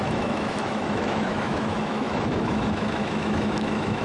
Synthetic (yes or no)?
yes